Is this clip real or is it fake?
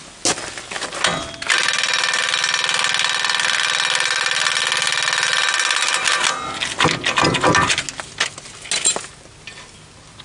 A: real